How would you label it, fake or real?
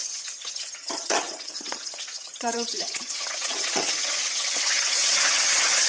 fake